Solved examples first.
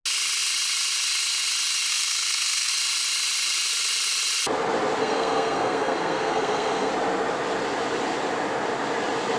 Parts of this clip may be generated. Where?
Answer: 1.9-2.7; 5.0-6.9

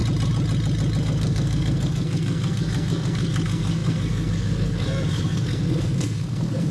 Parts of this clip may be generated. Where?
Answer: 1.0-6.7

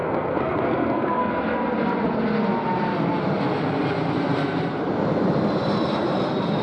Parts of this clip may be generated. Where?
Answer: 0.0-1.3

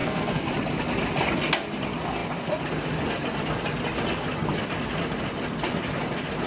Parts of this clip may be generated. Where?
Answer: 0.0-0.5